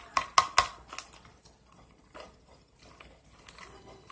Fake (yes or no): no